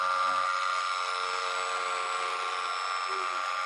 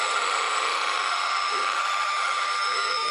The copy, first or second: second